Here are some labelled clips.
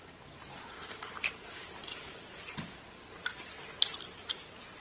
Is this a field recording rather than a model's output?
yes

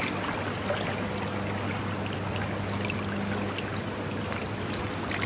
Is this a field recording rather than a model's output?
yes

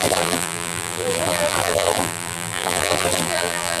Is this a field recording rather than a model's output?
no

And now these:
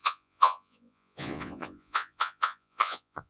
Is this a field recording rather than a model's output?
no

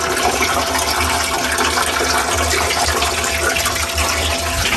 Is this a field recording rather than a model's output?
yes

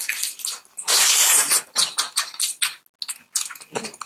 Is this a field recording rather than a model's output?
yes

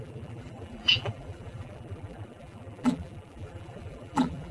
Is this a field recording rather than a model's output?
no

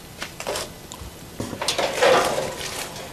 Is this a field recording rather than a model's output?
yes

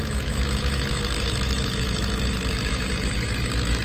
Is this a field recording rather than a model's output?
no